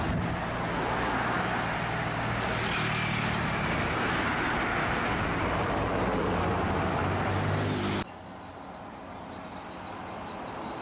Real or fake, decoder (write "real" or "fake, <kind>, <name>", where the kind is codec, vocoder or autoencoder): real